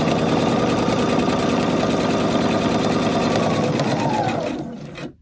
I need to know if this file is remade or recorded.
recorded